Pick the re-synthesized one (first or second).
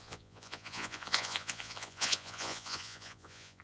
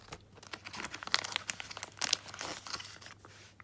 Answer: first